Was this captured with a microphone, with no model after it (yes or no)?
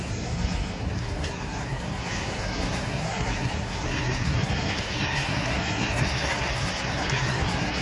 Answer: no